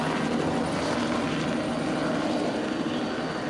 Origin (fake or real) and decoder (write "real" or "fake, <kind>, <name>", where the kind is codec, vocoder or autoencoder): real